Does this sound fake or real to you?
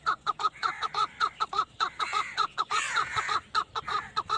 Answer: fake